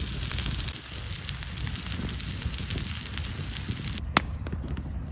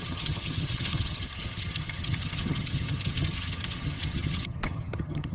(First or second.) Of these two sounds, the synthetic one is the second